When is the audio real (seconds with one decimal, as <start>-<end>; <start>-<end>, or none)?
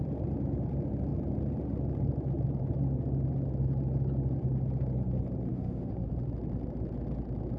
0.0-5.5; 6.1-7.6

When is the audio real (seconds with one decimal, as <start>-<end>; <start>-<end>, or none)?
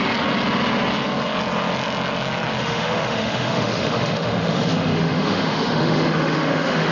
0.0-2.6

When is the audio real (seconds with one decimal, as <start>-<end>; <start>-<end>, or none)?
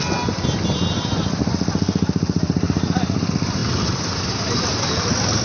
0.0-5.4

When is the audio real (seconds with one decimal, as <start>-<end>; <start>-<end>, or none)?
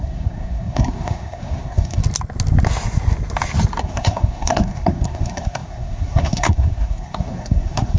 2.0-3.8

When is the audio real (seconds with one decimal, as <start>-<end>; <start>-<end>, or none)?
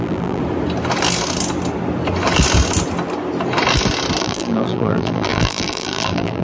0.4-4.2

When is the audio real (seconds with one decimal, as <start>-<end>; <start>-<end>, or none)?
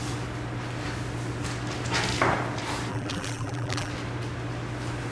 0.0-2.9; 3.9-5.1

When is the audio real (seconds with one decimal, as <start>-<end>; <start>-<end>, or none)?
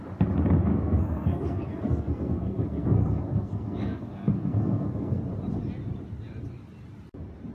0.0-0.7; 5.2-7.5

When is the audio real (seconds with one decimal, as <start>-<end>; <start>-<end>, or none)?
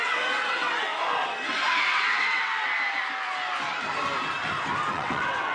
0.9-1.7; 2.7-4.9